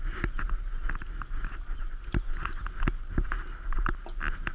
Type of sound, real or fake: real